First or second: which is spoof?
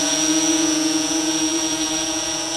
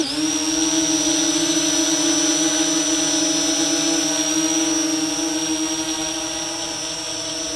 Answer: first